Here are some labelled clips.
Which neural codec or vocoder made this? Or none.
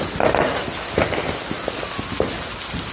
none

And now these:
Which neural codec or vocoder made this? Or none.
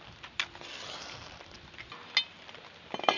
none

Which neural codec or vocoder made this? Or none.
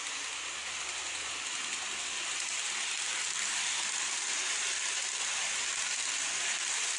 none